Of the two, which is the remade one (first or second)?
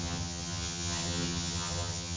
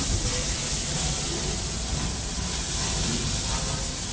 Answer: first